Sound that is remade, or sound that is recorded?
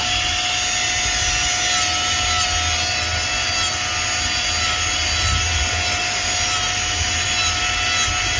recorded